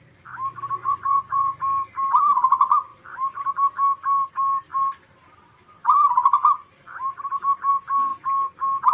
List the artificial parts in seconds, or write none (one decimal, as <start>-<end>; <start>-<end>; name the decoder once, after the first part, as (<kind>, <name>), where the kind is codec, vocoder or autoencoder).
0.8-1.6 (vocoder, Vocos)